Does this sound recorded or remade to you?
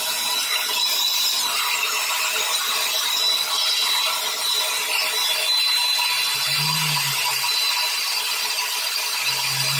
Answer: recorded